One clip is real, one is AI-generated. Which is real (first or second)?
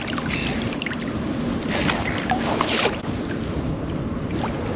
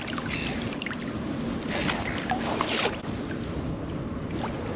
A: second